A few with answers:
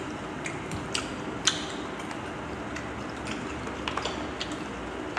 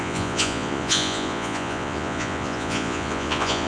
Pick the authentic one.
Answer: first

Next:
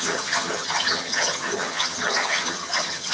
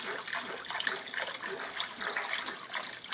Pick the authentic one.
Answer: second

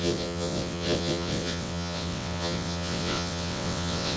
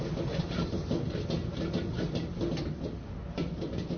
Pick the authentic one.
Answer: second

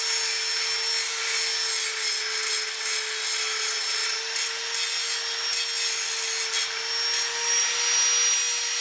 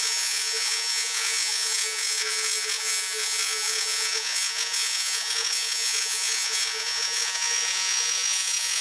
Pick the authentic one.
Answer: first